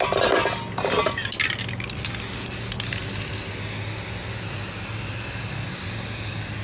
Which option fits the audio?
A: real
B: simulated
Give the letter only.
A